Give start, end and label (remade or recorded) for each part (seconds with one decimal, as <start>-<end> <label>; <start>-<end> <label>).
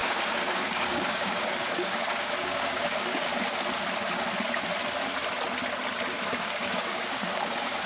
0.0-3.3 remade; 3.3-6.3 recorded; 6.3-7.9 remade